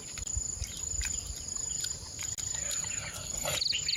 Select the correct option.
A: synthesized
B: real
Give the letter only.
B